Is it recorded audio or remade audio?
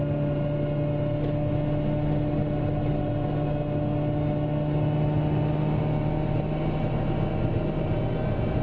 recorded